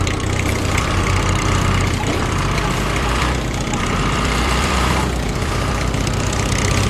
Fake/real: fake